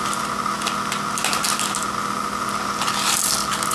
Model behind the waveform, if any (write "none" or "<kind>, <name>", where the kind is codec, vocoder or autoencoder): none